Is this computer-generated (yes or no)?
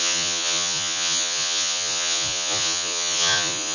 yes